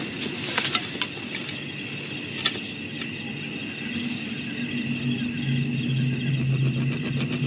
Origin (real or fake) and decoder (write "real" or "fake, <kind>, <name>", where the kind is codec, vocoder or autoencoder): real